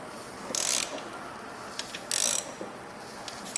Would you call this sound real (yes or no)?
yes